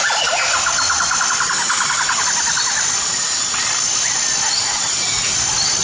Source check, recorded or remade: recorded